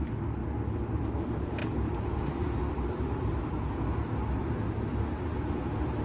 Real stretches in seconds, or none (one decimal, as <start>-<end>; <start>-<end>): 0.0-6.0